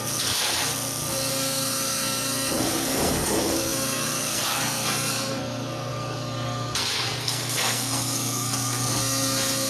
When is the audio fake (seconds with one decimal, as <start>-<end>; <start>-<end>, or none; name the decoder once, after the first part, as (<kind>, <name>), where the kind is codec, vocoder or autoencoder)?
0.0-0.7 (codec, SNAC); 1.3-9.7